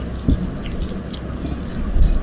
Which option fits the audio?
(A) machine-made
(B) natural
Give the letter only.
B